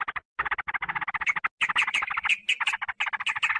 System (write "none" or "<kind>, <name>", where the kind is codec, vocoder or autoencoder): none